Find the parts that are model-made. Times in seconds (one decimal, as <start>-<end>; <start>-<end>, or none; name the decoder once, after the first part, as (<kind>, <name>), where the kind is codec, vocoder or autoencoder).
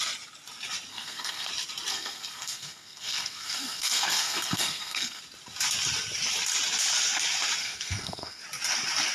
0.9-1.5 (codec, SNAC); 1.9-5.2; 7.6-8.4